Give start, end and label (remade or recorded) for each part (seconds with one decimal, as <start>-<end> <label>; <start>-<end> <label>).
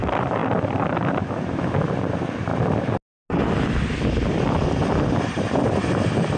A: 0.0-2.5 remade; 2.5-3.4 recorded; 3.4-6.4 remade